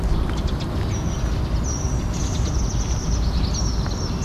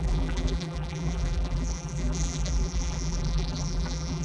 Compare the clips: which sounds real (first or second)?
first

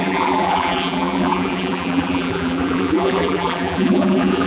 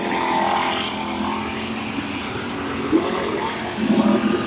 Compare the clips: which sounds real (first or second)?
second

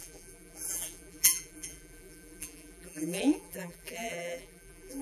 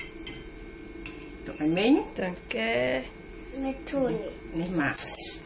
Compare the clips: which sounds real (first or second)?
second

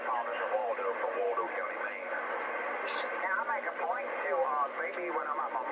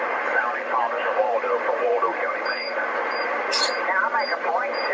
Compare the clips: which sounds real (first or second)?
first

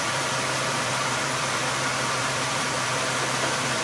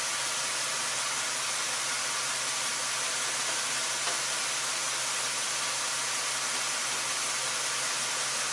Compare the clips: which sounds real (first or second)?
second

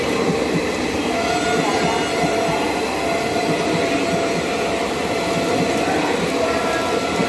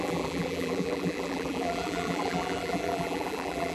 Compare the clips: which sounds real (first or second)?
first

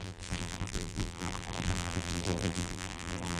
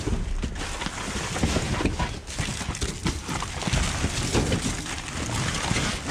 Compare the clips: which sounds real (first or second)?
second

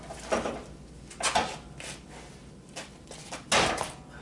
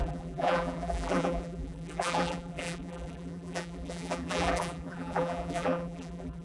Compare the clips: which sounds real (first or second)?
first